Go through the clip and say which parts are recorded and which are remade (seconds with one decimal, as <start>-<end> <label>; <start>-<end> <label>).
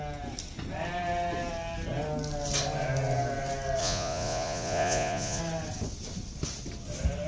0.0-3.8 recorded; 3.8-5.4 remade; 5.4-7.3 recorded